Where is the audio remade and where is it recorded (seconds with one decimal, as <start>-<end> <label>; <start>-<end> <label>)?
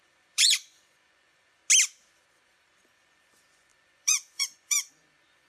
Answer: 0.0-1.6 remade; 1.6-2.3 recorded; 2.3-5.5 remade